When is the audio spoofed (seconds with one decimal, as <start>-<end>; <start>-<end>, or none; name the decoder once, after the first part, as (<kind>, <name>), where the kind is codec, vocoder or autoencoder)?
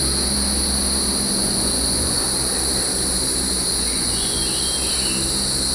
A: 1.4-2.2 (vocoder, Vocos); 3.7-4.4